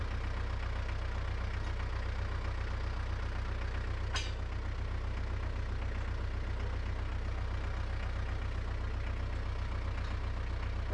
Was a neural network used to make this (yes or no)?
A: no